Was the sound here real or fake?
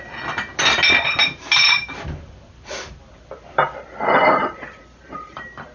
fake